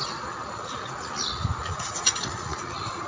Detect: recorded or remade remade